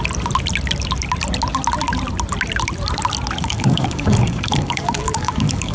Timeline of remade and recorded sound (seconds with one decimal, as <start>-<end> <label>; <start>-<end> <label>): 0.0-3.4 recorded; 3.4-5.7 remade